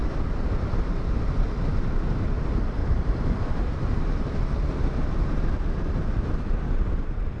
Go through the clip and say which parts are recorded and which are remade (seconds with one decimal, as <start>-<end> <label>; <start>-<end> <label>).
0.0-2.8 recorded; 2.8-4.4 remade; 4.4-7.4 recorded